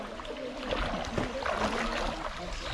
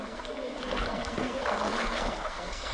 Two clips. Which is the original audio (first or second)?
first